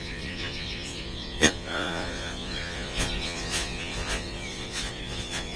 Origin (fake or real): fake